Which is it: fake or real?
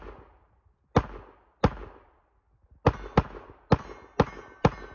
real